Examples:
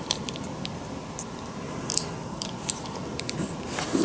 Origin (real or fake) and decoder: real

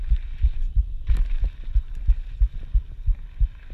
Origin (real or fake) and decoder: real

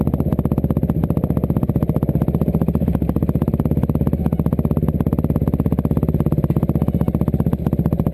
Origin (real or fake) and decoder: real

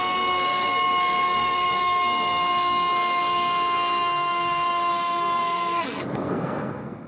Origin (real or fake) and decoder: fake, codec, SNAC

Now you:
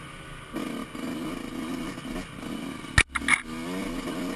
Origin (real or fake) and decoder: real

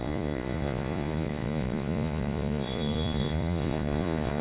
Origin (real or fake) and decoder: fake, vocoder, Vocos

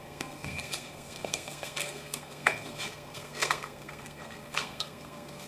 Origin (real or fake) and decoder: fake, codec, SNAC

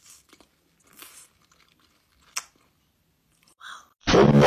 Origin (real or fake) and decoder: real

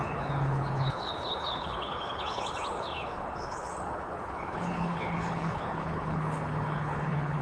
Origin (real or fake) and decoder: fake, codec, HILCodec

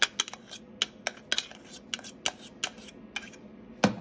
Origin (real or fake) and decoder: real